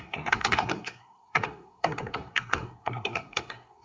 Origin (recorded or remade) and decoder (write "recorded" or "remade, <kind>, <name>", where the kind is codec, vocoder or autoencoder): remade, codec, SNAC